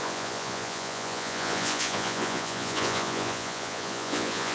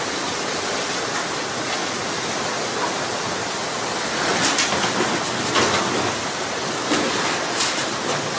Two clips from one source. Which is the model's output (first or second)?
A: first